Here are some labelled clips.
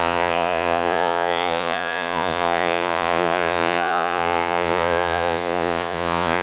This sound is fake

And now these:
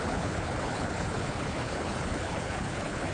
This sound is fake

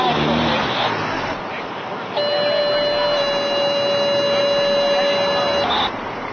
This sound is real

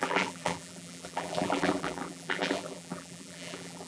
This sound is fake